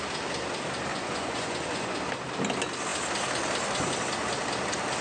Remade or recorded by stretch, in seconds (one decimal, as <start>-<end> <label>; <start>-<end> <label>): 0.0-0.9 recorded; 0.9-2.0 remade; 2.0-5.0 recorded